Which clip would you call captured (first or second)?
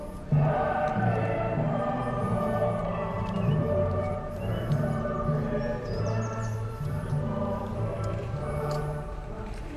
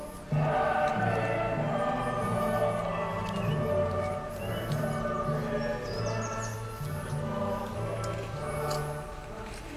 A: second